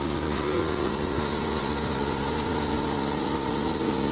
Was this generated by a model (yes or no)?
yes